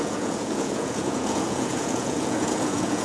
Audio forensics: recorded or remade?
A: remade